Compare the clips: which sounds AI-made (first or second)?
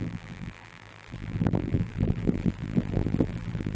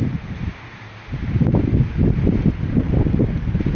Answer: first